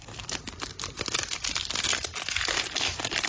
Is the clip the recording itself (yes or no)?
yes